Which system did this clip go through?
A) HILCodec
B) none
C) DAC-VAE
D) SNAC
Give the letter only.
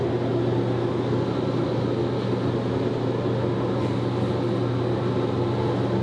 B